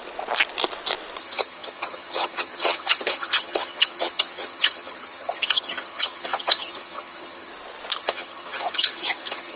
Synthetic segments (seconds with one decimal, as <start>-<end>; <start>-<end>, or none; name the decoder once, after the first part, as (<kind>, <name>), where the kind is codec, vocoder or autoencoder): 1.2-7.5 (vocoder, HiFi-GAN); 8.0-9.6